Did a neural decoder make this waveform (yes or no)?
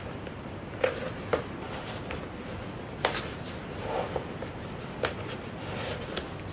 no